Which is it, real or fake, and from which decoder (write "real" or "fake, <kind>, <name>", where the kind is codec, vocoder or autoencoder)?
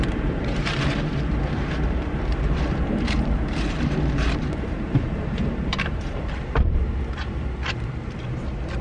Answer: fake, vocoder, BigVGAN v2